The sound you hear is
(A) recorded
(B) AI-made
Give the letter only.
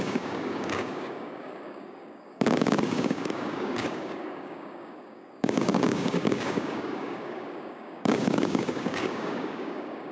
B